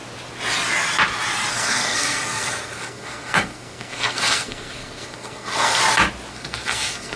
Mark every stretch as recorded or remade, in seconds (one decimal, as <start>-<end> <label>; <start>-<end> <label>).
0.0-1.5 recorded; 1.5-5.8 remade; 5.8-6.3 recorded; 6.3-7.2 remade